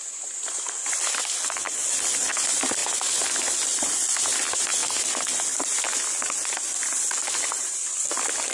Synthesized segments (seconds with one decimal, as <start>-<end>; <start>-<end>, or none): 0.0-1.8; 2.3-4.8; 6.5-8.5

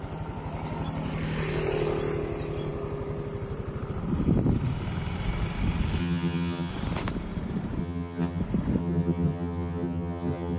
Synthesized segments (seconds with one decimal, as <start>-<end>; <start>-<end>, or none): 6.0-6.7; 7.8-8.4; 8.8-10.6